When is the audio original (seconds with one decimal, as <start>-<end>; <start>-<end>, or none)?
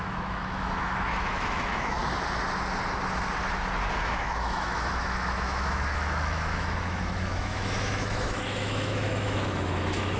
2.0-4.0